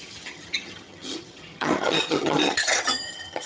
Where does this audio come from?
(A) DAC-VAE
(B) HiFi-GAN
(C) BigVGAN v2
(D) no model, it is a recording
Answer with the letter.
B